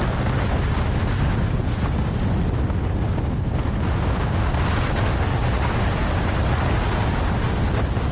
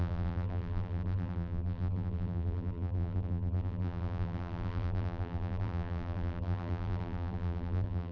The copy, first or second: second